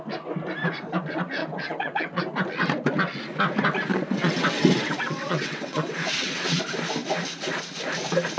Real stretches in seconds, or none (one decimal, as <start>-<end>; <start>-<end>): 0.0-1.4; 2.2-3.9; 6.6-8.4